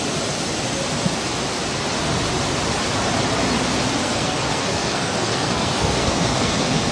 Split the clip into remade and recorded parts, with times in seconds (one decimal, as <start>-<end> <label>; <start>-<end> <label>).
0.0-4.0 recorded; 4.0-6.9 remade